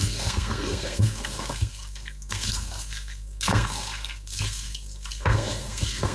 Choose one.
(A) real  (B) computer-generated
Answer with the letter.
B